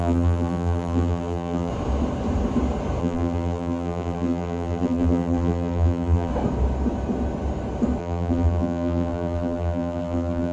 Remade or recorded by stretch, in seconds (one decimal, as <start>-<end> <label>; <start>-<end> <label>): 0.0-1.7 remade; 1.7-3.0 recorded; 3.0-6.3 remade; 6.3-8.0 recorded; 8.0-10.5 remade